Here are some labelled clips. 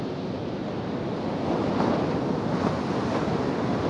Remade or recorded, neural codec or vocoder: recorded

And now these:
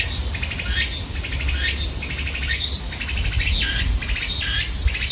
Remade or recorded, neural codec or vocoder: recorded